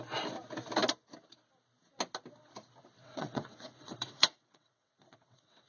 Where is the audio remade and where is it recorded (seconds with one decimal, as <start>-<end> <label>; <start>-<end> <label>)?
0.0-3.0 recorded; 3.0-5.7 remade